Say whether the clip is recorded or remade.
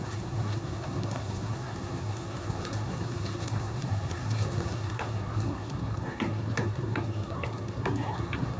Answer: remade